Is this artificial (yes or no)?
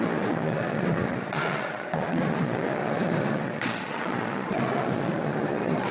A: yes